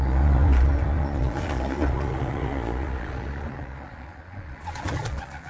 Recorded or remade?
remade